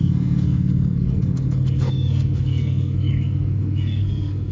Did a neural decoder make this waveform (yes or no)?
yes